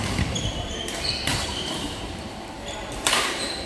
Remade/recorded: remade